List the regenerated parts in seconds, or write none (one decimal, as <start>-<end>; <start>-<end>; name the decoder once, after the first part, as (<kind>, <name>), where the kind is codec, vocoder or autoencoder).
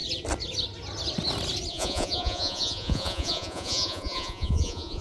1.7-5.0 (vocoder, Vocos)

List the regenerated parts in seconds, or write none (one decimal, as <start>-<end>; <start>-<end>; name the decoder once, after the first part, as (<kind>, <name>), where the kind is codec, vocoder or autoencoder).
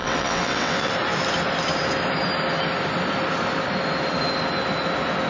0.0-0.9 (vocoder, WaveNeXt)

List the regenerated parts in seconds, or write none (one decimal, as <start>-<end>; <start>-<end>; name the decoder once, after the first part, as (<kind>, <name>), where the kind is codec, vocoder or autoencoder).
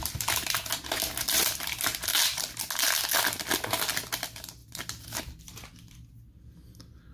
none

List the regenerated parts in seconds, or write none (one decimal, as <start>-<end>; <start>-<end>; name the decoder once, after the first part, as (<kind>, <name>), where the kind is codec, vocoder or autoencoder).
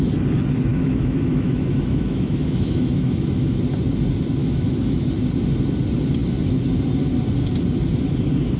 0.7-3.6 (autoencoder, DAC-VAE); 4.4-5.1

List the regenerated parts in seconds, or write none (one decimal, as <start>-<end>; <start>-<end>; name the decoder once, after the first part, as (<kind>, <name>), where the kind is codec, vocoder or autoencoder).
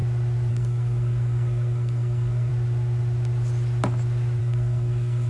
0.5-2.5 (codec, SNAC); 4.4-5.3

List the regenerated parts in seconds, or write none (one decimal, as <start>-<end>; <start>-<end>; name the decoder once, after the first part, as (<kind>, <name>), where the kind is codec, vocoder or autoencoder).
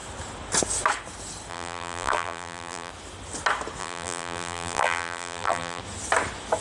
1.5-2.9 (vocoder, BigVGAN v2); 3.8-5.8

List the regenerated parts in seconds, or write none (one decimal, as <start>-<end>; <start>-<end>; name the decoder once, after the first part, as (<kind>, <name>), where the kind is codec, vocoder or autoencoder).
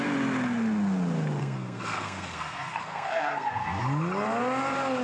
1.4-3.8 (codec, SNAC)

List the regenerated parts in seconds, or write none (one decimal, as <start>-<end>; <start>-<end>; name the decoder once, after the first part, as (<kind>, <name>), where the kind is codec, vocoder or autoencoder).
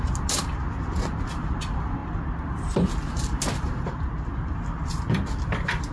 none